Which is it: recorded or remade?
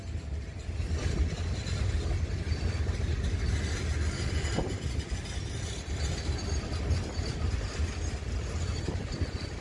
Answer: recorded